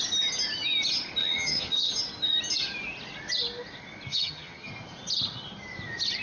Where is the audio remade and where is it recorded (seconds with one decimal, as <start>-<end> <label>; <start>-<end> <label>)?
0.0-1.2 recorded; 1.2-1.9 remade; 1.9-4.1 recorded; 4.1-4.7 remade; 4.7-6.2 recorded